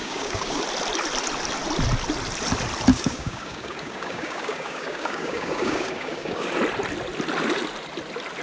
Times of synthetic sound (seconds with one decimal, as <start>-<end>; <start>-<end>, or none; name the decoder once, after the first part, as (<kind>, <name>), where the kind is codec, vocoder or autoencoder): 0.0-0.6 (codec, DAC); 2.9-6.5